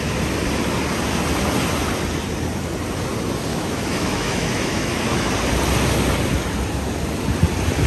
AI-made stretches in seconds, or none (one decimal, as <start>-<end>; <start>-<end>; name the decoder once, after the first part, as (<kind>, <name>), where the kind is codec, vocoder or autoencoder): 3.5-5.3 (autoencoder, DAC-VAE)

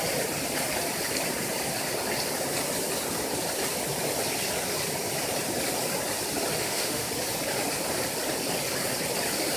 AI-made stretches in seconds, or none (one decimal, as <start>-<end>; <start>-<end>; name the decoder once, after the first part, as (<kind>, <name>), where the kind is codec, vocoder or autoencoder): 6.6-7.1 (autoencoder, DAC-VAE)